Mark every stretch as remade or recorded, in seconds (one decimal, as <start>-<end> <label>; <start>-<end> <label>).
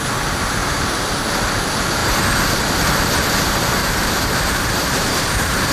0.0-0.6 recorded; 0.6-1.1 remade; 1.1-3.8 recorded; 3.8-5.7 remade